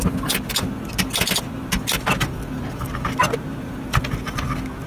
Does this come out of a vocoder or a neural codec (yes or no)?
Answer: no